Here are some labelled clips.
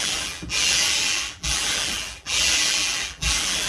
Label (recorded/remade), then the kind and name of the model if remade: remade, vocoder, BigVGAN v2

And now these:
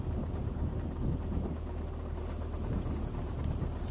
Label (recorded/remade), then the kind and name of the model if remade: recorded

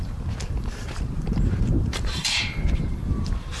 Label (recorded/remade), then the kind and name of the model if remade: remade, vocoder, BigVGAN v2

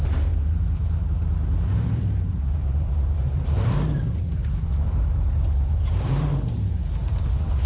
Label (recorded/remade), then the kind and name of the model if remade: remade, vocoder, BigVGAN v2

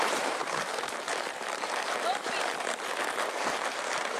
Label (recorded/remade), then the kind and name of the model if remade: remade, vocoder, BigVGAN v2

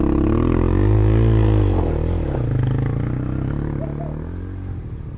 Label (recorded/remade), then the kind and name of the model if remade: recorded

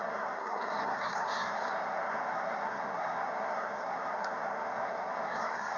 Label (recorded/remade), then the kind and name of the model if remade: remade, codec, SNAC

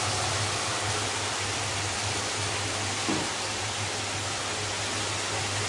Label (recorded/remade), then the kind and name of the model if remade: recorded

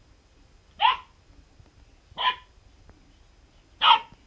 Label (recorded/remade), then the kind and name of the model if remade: recorded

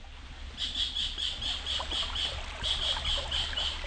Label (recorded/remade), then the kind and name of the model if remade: recorded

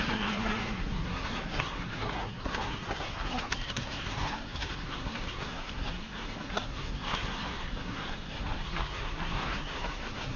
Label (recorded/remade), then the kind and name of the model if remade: remade, codec, SNAC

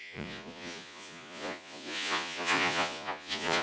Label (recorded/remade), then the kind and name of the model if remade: remade, vocoder, Vocos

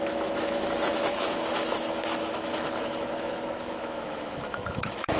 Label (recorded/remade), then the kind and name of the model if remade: remade, autoencoder, DAC-VAE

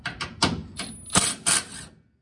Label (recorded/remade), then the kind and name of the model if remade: recorded